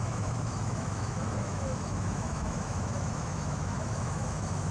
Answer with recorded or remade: remade